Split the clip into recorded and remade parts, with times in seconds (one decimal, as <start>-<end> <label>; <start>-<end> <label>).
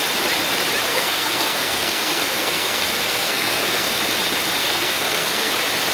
0.0-0.9 recorded; 0.9-4.0 remade; 4.0-4.6 recorded; 4.6-5.5 remade; 5.5-5.9 recorded